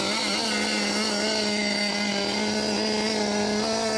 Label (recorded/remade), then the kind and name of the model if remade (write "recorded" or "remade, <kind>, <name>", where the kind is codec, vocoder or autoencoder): recorded